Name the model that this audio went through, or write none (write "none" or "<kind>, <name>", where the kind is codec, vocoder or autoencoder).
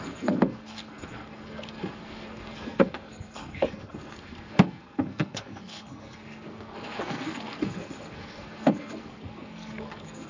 codec, SNAC